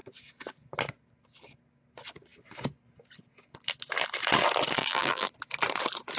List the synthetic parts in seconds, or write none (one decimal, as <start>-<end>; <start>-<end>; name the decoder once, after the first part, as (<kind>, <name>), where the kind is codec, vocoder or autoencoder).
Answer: 4.8-5.3 (vocoder, BigVGAN v2)